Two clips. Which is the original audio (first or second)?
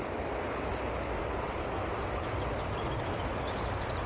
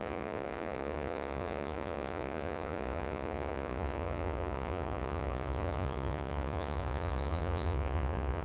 first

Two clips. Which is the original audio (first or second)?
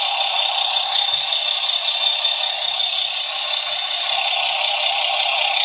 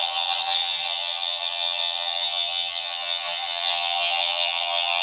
first